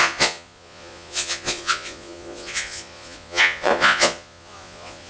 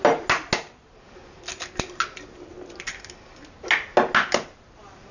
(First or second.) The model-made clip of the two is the first